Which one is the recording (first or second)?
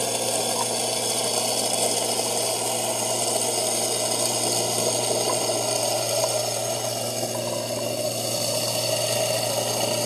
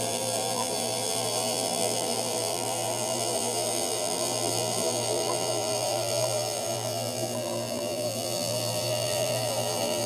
first